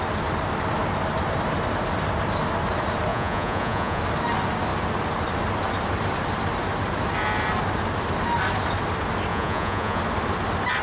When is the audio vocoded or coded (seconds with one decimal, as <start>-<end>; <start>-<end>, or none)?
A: 3.1-4.0; 9.3-10.0